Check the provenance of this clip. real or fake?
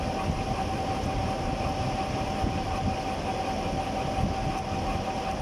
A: real